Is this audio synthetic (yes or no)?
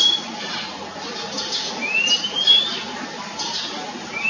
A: no